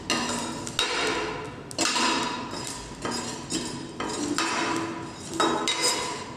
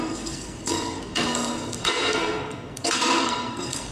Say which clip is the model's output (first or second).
second